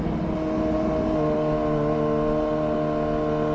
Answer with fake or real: real